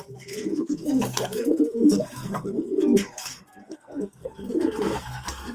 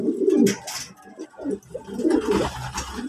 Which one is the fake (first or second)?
first